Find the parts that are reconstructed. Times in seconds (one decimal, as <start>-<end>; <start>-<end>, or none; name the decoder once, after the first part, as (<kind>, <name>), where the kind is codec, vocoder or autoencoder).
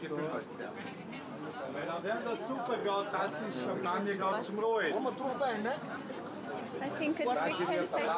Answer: none